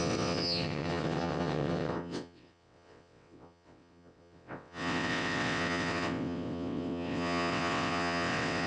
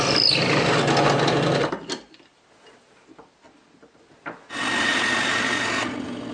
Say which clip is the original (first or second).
second